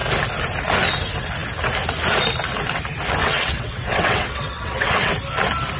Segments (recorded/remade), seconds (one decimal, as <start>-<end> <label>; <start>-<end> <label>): 0.0-3.2 recorded; 3.2-5.1 remade; 5.1-5.8 recorded